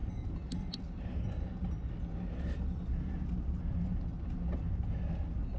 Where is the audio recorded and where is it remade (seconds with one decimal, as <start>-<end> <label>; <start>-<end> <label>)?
0.0-5.6 recorded